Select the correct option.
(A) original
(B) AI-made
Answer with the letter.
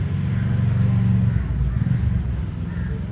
A